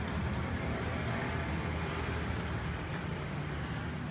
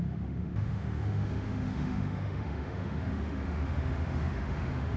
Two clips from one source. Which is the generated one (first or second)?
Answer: second